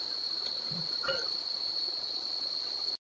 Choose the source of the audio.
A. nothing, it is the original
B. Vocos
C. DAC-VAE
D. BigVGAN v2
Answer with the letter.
A